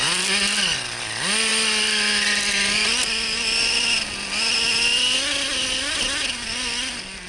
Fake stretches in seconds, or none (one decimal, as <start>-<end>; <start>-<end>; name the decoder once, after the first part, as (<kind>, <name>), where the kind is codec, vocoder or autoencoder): none